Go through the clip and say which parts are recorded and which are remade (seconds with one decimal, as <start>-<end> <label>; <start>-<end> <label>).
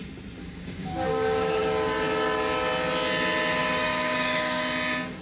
0.0-0.4 recorded; 0.4-1.6 remade; 1.6-3.6 recorded; 3.6-4.6 remade; 4.6-5.2 recorded